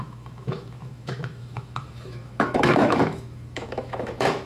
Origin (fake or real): fake